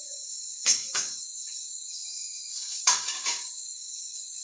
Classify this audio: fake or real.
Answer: fake